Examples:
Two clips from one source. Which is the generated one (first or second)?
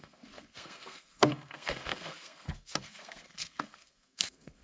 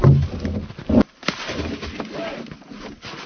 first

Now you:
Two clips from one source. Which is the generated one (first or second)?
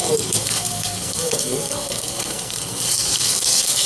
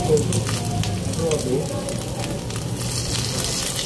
first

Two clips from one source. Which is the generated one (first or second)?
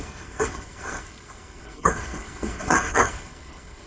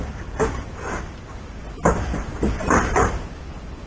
first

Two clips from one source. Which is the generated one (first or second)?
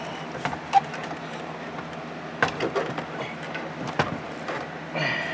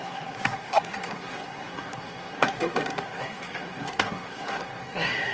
second